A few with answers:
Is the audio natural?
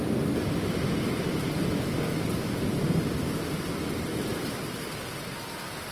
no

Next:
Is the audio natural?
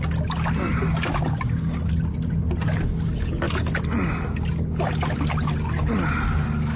yes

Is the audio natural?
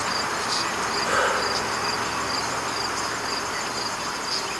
yes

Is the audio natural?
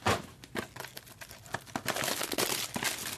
yes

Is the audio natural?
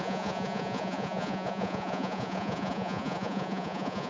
no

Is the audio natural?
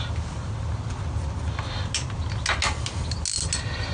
yes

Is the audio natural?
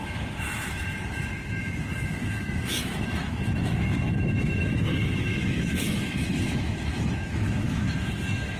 no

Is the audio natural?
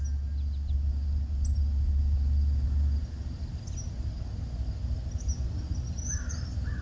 yes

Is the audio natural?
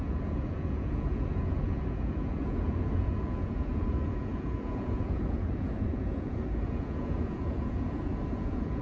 no